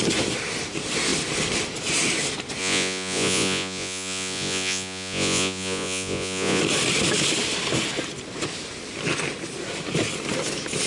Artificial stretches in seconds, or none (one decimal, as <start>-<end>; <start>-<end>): 2.6-6.6